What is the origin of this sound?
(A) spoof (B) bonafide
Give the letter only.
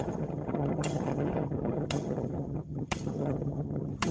A